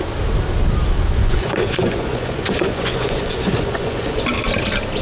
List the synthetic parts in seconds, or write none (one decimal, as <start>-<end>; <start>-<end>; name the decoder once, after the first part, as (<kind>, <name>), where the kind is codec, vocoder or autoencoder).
1.2-4.2 (vocoder, Vocos)